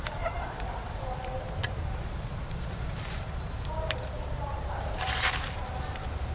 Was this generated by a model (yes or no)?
yes